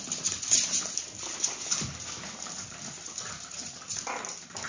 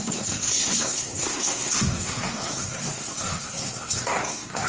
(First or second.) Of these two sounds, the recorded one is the first